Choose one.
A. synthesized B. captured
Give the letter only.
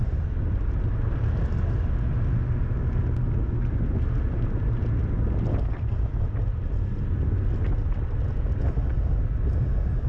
B